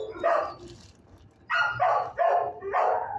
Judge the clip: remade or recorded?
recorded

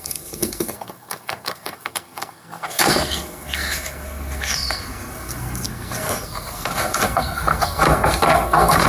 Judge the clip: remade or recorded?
remade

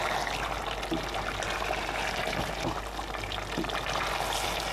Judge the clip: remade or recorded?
recorded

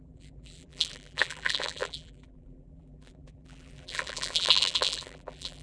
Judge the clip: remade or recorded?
remade